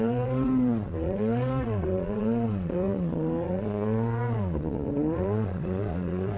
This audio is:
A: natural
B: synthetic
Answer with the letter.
B